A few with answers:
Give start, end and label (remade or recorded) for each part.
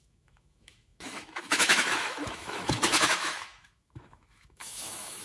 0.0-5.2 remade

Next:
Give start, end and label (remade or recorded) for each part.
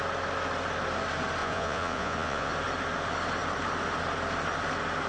0.0-1.4 recorded; 1.4-2.5 remade; 2.5-5.1 recorded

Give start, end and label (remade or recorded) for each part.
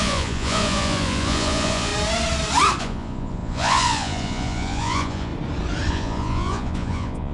0.0-1.9 remade; 1.9-2.8 recorded; 2.8-5.3 remade; 5.3-5.9 recorded; 5.9-7.3 remade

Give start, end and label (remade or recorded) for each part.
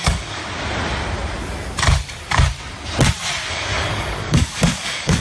0.0-0.4 remade; 0.4-3.5 recorded; 3.5-5.2 remade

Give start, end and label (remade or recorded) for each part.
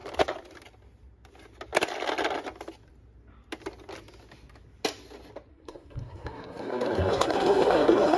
0.0-5.5 recorded; 5.5-8.2 remade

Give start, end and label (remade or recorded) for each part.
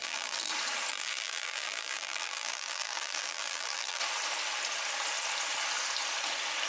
0.0-0.5 remade; 0.5-0.9 recorded; 0.9-4.0 remade; 4.0-6.7 recorded